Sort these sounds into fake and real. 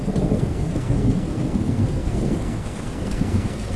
fake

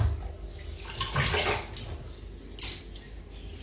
real